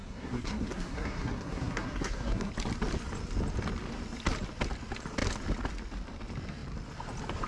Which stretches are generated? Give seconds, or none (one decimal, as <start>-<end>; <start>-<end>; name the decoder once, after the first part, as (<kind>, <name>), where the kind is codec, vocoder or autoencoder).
0.0-2.5 (codec, SNAC)

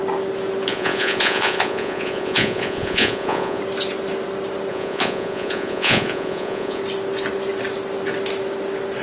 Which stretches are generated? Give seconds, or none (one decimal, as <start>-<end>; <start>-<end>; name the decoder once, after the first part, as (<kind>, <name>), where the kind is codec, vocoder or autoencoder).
0.7-3.6 (vocoder, Vocos); 4.7-6.8